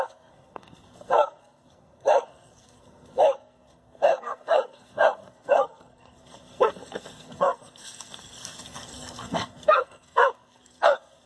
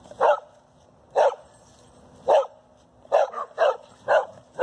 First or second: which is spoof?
first